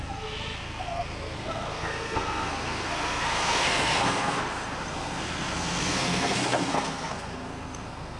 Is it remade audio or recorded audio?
remade